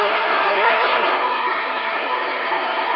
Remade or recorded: remade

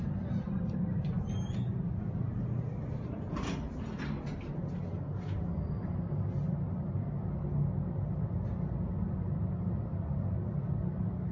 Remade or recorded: recorded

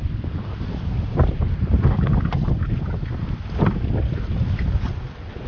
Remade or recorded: recorded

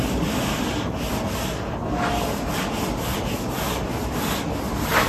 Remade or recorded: recorded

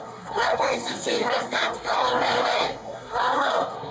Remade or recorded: remade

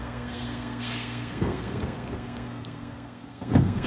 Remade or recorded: remade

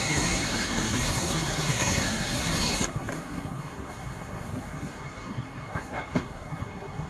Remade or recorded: remade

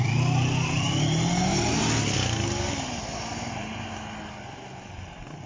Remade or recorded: recorded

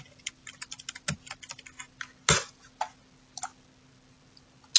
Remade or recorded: recorded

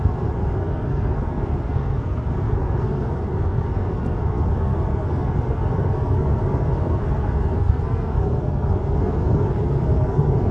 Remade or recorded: remade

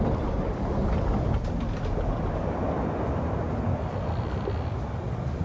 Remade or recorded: recorded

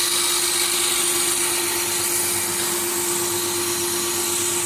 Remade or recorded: recorded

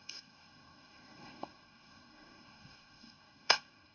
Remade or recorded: remade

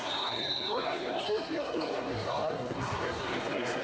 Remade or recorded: remade